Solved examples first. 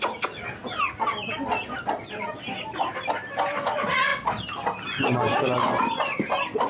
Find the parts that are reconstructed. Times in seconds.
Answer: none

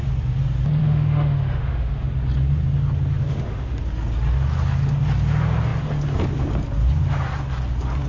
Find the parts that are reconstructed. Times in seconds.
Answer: 0.8-2.1; 3.2-3.8

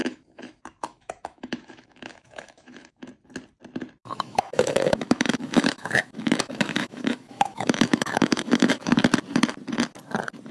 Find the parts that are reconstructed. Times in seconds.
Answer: 0.0-3.1; 4.0-9.0

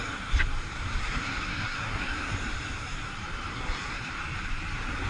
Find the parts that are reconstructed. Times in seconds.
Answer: 1.0-2.3; 3.5-4.1

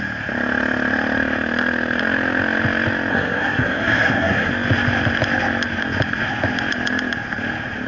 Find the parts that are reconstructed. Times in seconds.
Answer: 3.1-4.5

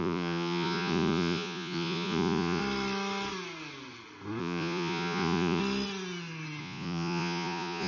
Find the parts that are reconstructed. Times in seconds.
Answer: 0.0-2.6; 4.4-5.6; 6.6-7.9